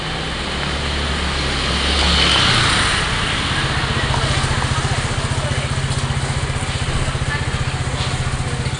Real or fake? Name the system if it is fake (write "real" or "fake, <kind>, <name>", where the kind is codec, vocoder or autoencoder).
real